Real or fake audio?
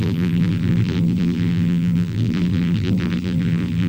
fake